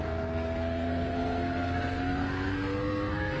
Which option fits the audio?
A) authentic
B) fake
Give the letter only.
B